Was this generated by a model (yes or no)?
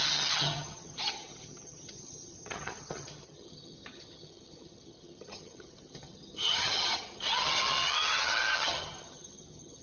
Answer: yes